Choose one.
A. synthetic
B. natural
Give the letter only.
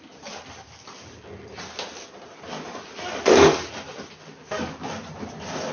B